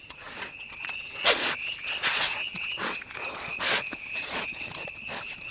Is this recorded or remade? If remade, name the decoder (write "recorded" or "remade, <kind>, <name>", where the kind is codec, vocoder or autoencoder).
remade, vocoder, Vocos